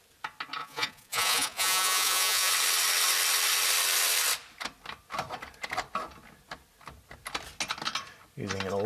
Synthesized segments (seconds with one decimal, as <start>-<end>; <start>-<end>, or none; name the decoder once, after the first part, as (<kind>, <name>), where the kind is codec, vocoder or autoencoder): 0.6-2.5 (vocoder, Vocos)